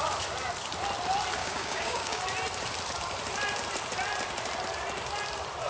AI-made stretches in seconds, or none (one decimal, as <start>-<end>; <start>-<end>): 1.4-2.2